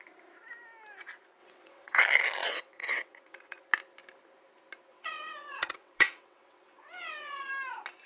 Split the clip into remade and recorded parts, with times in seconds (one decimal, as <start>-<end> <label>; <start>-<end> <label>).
0.0-1.4 recorded; 1.4-2.0 remade; 2.0-2.4 recorded; 2.4-3.6 remade; 3.6-4.9 recorded; 4.9-7.5 remade; 7.5-8.1 recorded